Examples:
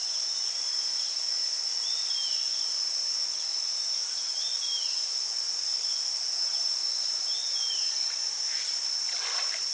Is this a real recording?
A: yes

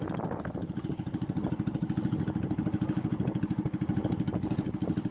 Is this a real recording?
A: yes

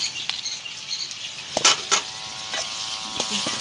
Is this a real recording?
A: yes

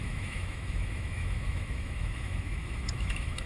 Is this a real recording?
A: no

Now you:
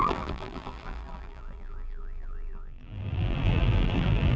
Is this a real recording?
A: no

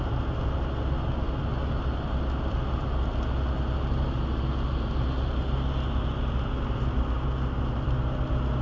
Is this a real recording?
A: yes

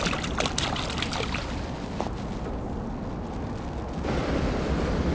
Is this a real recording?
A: yes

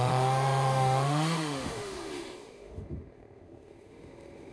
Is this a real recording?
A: no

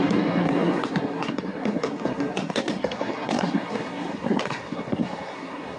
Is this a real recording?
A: no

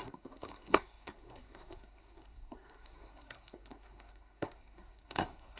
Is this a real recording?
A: no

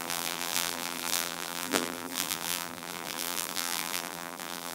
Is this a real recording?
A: no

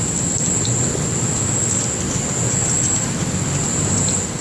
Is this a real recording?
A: yes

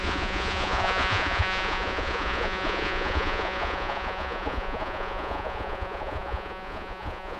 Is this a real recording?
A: no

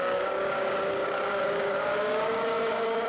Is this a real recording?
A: no